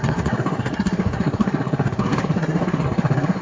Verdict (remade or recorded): remade